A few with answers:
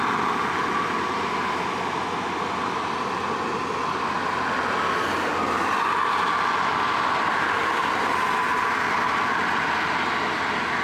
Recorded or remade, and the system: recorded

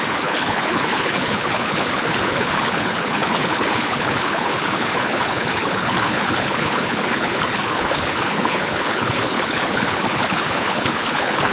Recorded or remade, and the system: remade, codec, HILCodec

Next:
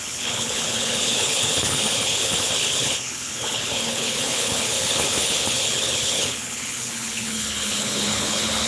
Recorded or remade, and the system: remade, codec, HILCodec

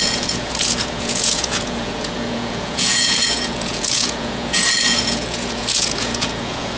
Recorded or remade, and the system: remade, vocoder, Vocos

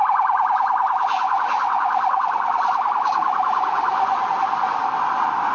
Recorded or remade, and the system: recorded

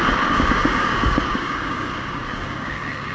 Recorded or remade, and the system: remade, codec, DAC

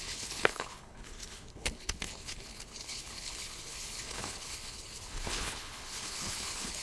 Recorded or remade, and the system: remade, codec, HILCodec